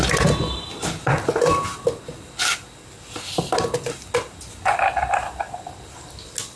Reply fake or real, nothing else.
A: real